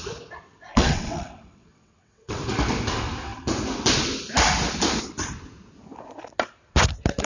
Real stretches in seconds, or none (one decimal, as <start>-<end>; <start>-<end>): 0.0-0.7; 2.4-7.2